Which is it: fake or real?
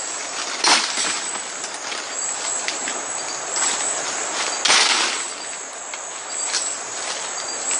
real